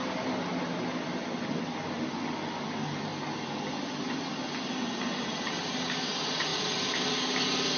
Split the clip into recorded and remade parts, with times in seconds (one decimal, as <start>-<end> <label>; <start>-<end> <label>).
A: 0.0-7.8 recorded